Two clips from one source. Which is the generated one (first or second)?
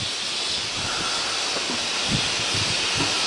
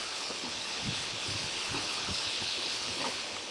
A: second